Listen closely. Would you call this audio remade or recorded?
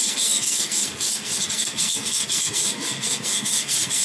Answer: remade